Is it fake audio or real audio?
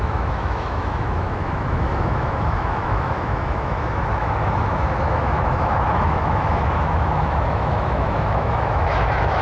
fake